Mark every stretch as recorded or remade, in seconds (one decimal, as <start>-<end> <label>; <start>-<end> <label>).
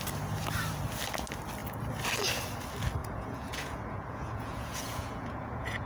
0.0-3.0 recorded; 3.0-5.9 remade